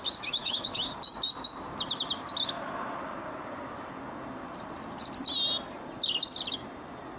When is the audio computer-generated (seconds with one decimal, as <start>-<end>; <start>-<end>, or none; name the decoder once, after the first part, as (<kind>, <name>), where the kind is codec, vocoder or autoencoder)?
0.4-0.9 (autoencoder, DAC-VAE)